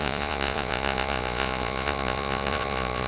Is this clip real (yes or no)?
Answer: no